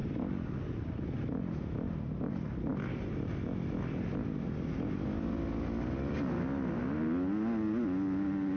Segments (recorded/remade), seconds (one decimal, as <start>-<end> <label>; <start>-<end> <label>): 0.0-8.6 recorded